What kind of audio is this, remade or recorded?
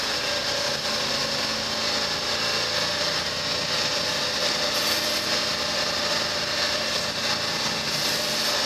recorded